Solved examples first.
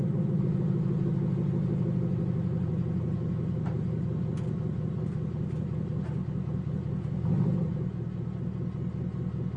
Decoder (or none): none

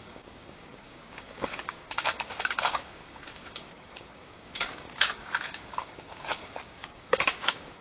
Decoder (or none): codec, DAC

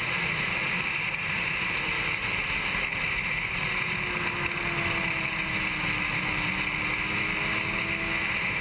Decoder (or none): none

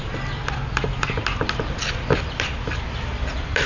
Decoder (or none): none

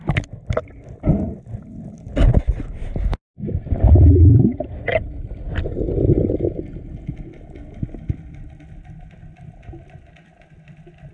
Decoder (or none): none